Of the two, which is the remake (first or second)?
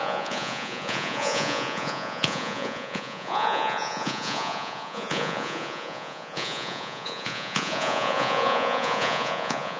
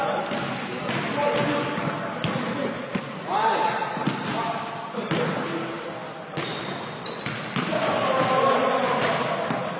first